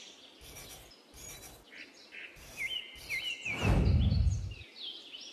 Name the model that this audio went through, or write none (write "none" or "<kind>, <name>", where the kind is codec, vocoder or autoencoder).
none